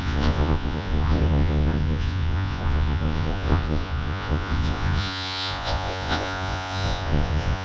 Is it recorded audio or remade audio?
remade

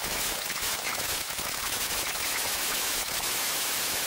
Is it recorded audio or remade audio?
remade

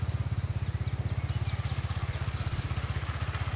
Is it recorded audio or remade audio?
recorded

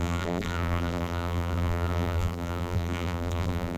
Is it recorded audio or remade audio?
remade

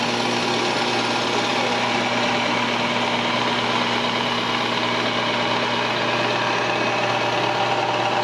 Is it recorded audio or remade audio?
recorded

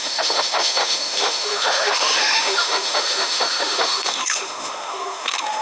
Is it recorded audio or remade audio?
remade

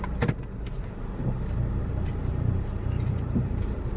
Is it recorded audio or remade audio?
remade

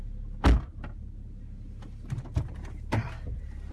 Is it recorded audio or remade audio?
recorded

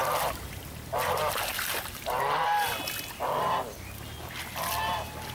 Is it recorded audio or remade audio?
recorded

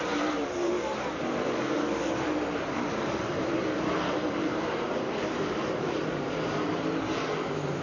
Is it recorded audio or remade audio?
remade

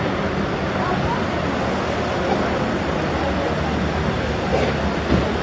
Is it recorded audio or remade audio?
recorded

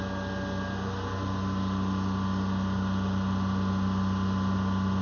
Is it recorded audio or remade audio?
recorded